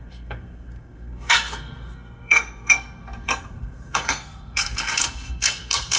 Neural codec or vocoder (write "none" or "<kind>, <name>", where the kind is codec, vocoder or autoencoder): codec, SNAC